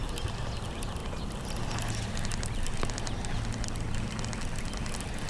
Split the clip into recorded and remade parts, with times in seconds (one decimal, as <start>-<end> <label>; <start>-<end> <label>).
0.0-5.3 recorded